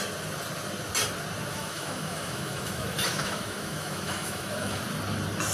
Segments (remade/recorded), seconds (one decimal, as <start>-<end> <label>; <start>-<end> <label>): 0.0-1.5 recorded; 1.5-4.8 remade; 4.8-5.5 recorded